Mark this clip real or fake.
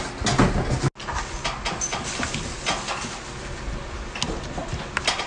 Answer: real